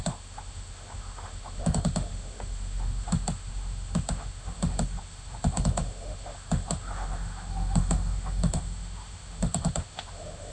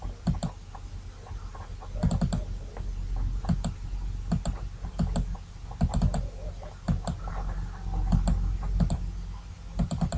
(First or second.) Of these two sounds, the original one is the second